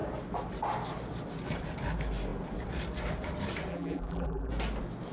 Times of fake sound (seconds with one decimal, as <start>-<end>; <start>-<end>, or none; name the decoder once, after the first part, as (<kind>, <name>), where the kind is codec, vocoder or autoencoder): 3.7-4.5 (vocoder, BigVGAN v2)